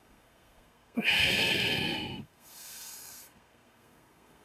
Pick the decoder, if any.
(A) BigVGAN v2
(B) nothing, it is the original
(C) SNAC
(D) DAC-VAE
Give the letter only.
C